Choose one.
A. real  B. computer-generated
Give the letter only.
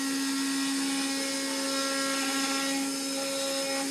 A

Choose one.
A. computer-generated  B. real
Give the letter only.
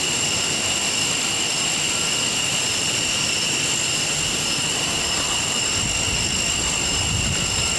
B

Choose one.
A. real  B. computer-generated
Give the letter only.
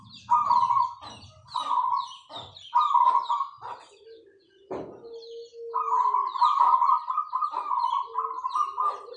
A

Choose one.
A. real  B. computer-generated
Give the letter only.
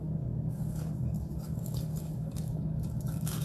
B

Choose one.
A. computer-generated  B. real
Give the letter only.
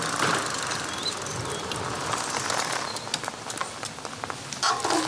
A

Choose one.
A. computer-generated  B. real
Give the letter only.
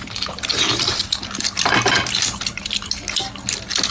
B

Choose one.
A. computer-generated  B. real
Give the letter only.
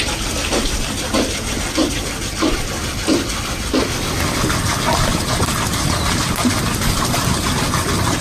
B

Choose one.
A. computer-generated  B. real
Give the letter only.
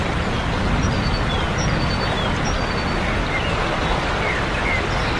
B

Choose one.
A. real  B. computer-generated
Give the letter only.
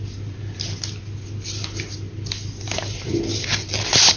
A